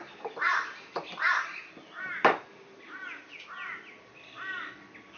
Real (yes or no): yes